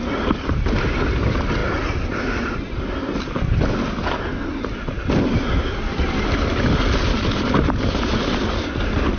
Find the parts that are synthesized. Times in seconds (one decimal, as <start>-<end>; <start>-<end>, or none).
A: none